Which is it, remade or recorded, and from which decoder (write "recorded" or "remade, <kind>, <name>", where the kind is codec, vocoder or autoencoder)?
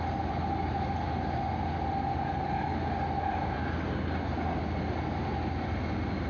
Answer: recorded